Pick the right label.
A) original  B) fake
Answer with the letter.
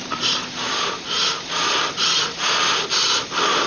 B